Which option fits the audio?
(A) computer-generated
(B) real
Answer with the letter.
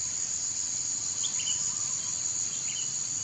B